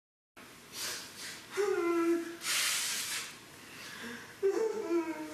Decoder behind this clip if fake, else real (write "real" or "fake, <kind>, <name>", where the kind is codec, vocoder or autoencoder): real